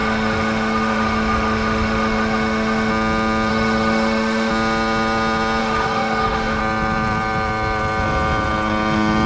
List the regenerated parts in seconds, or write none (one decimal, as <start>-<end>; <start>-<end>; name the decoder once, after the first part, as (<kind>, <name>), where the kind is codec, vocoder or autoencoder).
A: 0.0-2.9 (autoencoder, DAC-VAE); 3.5-4.5; 5.6-6.6